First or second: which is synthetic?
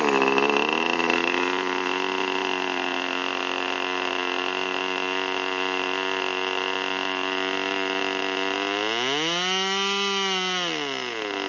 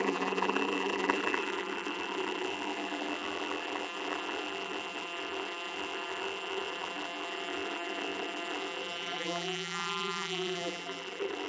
second